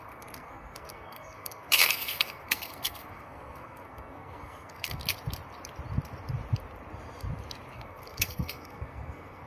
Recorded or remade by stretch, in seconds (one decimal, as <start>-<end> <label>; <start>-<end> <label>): 0.0-5.0 remade; 5.0-7.7 recorded; 7.7-9.5 remade